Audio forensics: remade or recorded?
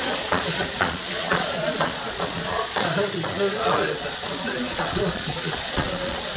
remade